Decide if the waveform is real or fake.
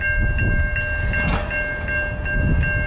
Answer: real